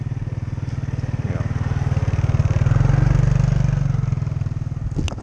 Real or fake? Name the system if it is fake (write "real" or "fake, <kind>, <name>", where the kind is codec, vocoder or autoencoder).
real